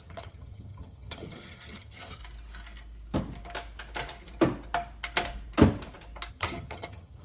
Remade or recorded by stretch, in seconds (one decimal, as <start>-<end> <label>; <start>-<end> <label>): 0.0-2.2 remade; 2.2-6.3 recorded; 6.3-7.2 remade

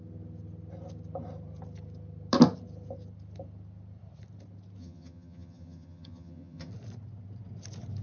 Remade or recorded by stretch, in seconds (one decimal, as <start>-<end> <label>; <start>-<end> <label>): 0.0-4.8 recorded; 4.8-6.7 remade; 6.7-8.0 recorded

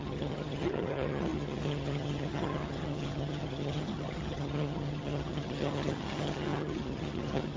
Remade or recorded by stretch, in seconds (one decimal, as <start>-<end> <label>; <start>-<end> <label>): 0.0-7.6 remade

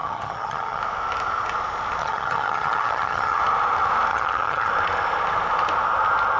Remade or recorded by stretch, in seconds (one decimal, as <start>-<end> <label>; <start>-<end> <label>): 0.0-0.8 remade; 0.8-2.0 recorded; 2.0-3.4 remade; 3.4-4.1 recorded; 4.1-4.7 remade; 4.7-6.4 recorded

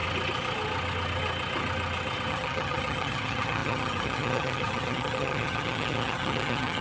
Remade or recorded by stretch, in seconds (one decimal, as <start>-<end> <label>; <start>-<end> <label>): 0.0-2.3 recorded; 2.3-6.8 remade